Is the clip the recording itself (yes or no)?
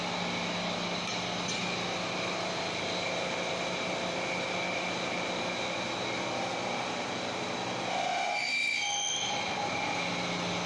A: yes